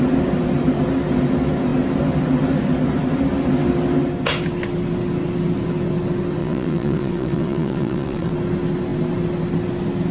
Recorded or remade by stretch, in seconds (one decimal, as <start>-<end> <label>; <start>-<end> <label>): 0.0-6.4 recorded; 6.4-8.3 remade; 8.3-10.1 recorded